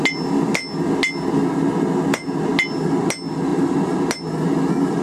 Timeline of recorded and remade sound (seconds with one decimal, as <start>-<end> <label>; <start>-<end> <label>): 0.0-3.5 recorded; 3.5-4.0 remade; 4.0-5.0 recorded